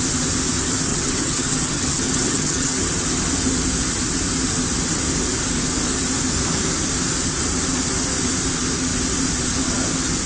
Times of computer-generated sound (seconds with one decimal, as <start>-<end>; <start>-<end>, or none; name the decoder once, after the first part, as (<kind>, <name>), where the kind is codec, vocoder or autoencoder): 0.9-2.7 (vocoder, HiFi-GAN)